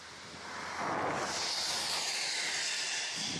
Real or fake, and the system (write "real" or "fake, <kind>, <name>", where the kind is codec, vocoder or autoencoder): real